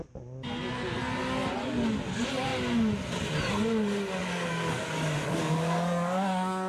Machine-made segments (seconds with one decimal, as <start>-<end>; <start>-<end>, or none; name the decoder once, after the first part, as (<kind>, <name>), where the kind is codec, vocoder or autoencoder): 4.2-6.7 (codec, DAC)